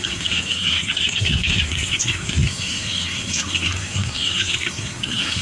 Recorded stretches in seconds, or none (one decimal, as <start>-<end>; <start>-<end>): none

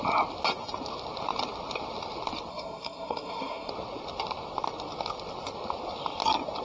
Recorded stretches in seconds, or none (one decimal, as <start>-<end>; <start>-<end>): 0.0-2.5; 3.7-6.6

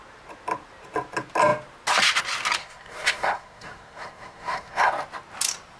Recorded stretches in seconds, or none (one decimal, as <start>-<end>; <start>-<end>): 0.0-2.6; 4.9-5.8

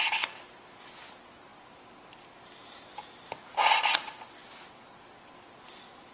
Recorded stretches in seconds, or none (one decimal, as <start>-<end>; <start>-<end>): 0.0-6.1

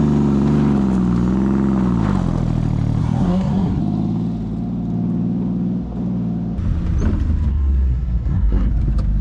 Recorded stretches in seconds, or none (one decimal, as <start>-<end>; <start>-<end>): 0.0-3.0; 3.8-7.5; 8.7-9.2

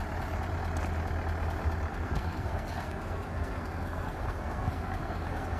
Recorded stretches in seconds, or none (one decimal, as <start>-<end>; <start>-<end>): 0.0-1.9

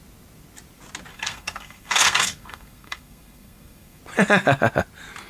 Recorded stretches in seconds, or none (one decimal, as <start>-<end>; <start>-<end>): 0.0-1.1; 4.0-5.3

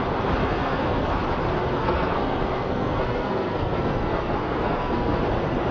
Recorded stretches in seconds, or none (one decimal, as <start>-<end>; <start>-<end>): 0.0-0.4; 1.1-1.8; 5.2-5.7